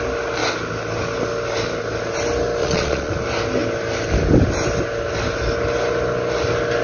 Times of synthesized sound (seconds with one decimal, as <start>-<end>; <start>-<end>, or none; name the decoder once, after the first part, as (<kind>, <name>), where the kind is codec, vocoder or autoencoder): 2.6-3.1 (vocoder, Vocos)

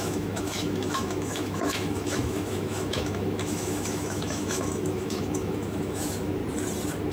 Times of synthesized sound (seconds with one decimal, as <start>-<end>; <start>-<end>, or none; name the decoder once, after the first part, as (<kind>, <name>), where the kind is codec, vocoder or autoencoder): 0.0-6.4 (autoencoder, DAC-VAE)